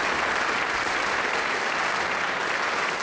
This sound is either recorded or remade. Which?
recorded